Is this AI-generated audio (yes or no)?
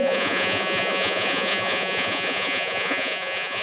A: yes